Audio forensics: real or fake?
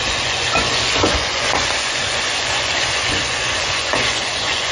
fake